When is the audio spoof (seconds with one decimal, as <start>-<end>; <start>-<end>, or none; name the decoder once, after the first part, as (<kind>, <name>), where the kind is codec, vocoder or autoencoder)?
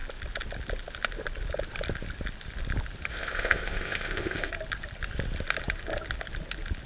3.1-4.5 (codec, ZipCodec)